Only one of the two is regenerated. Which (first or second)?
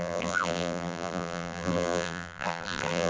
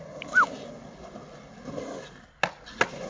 first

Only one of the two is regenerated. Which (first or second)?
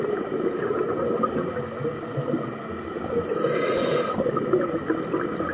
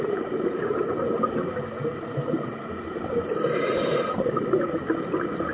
second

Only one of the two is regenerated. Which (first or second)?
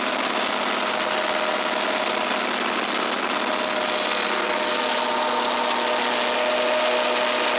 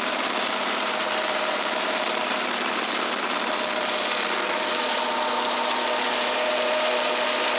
second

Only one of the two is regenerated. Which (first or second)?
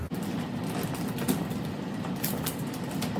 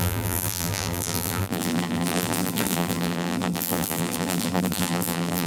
second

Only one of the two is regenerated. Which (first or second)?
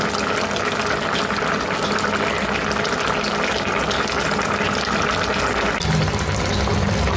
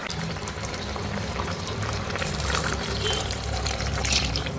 second